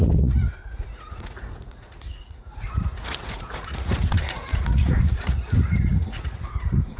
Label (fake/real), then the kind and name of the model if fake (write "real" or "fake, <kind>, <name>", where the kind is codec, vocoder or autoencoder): fake, vocoder, Vocos